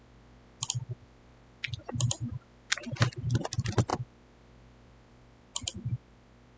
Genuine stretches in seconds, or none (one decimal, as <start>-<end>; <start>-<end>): 0.0-6.6